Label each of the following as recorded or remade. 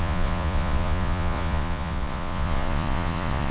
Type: remade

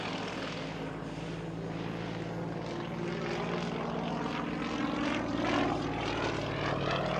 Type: recorded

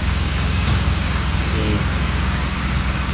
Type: remade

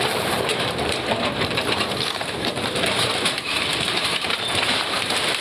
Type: remade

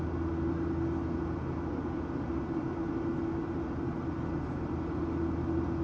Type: recorded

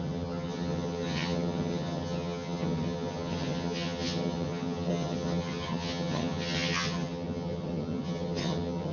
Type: remade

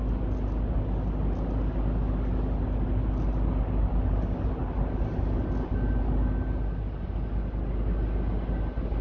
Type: recorded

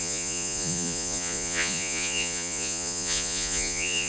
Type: remade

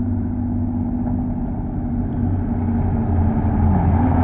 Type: recorded